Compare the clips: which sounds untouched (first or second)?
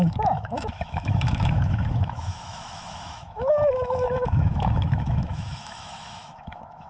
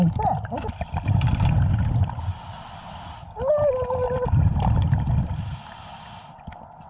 second